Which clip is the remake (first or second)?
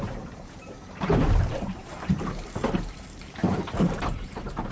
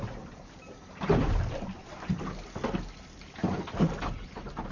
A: first